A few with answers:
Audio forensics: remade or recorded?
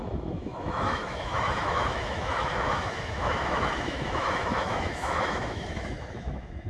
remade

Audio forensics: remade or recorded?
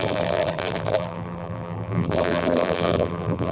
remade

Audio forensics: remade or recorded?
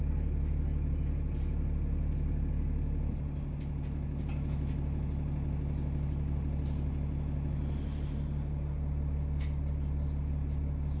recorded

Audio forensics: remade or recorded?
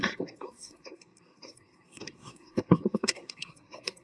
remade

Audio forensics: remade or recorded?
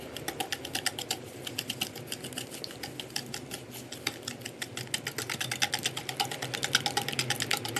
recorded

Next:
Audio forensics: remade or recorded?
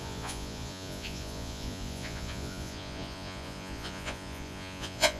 remade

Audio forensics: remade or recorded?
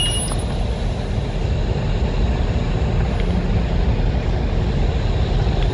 recorded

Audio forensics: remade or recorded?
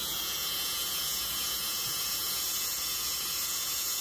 remade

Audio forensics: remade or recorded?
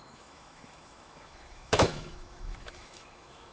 remade